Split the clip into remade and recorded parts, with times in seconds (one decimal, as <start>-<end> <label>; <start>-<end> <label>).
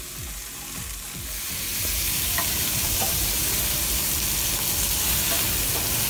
0.0-1.7 recorded; 1.7-3.6 remade; 3.6-6.1 recorded